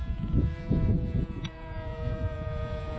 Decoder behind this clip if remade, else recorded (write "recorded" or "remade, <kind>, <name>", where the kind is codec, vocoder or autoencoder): remade, vocoder, Vocos